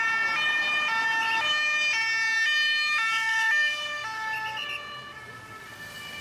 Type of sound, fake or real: real